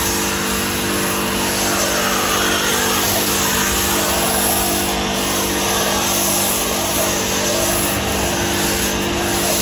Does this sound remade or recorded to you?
recorded